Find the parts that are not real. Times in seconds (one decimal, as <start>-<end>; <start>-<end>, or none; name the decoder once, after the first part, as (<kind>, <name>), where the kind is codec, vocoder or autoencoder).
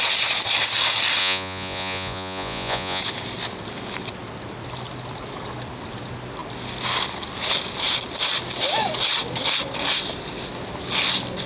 1.2-3.0 (vocoder, Vocos)